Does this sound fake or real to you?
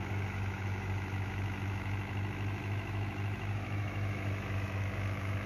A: fake